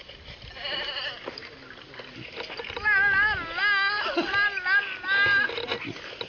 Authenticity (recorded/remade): recorded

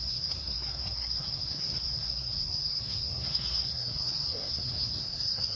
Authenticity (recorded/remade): remade